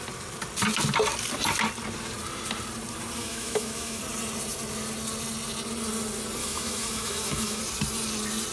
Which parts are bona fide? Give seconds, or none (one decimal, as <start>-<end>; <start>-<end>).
0.0-3.2; 4.0-6.4; 7.6-8.5